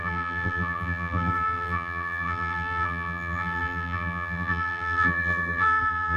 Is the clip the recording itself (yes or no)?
no